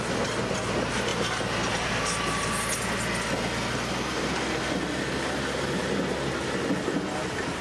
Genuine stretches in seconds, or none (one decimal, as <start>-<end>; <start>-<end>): 0.0-7.6